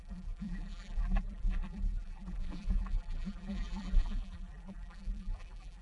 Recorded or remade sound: remade